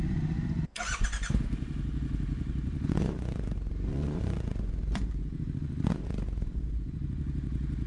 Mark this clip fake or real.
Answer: fake